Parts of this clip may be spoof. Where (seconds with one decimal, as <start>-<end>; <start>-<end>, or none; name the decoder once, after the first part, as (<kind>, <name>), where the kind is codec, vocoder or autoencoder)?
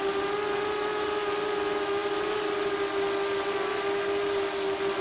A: none